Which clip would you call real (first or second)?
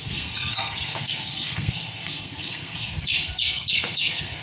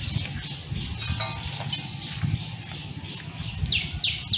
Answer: second